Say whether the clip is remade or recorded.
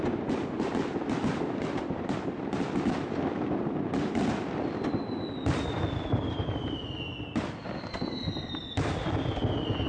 recorded